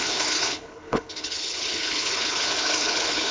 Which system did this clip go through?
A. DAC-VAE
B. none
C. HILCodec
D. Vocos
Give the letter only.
C